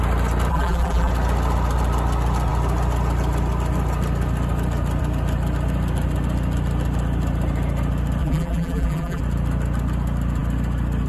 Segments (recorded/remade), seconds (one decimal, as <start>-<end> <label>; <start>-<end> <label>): 0.0-0.5 recorded; 0.5-1.1 remade; 1.1-8.2 recorded; 8.2-9.2 remade; 9.2-11.1 recorded